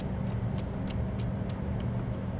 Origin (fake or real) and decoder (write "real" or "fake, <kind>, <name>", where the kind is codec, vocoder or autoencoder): real